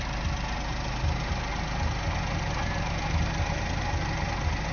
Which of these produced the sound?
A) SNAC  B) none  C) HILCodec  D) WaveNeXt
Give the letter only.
B